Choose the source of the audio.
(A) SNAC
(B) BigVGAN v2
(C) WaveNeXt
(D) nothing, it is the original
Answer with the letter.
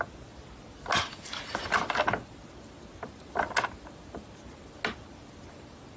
D